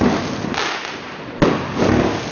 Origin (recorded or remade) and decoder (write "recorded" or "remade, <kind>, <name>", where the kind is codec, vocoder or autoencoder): recorded